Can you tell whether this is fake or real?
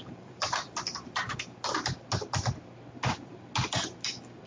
real